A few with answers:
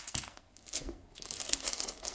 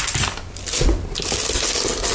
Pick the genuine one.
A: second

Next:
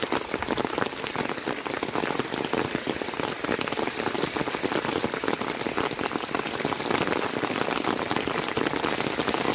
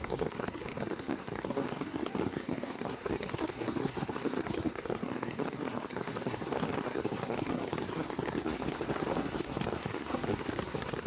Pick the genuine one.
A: first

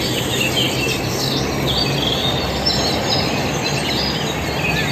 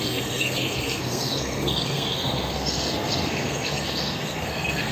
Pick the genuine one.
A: first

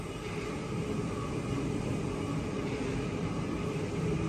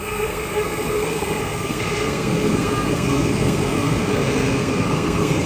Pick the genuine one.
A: first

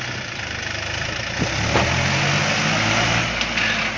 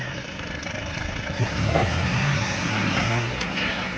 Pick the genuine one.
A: first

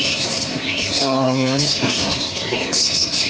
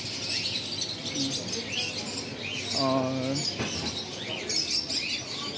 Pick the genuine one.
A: second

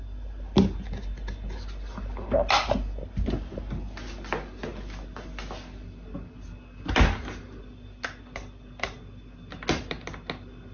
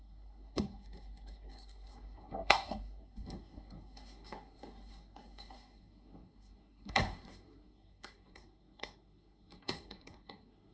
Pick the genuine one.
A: first